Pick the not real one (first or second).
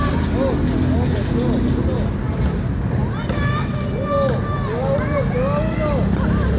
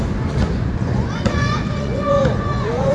second